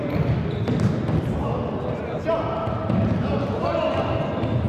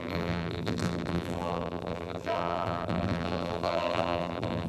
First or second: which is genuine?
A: first